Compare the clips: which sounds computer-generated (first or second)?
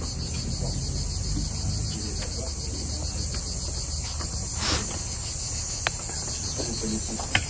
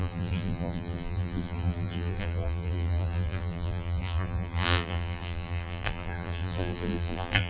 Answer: second